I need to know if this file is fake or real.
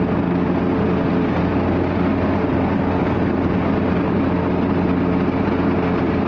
real